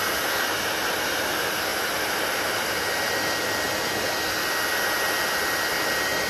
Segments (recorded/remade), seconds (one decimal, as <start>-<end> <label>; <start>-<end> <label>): 0.0-6.3 recorded